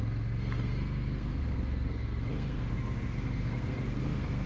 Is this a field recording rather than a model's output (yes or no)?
no